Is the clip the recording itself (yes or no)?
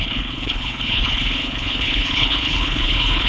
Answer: no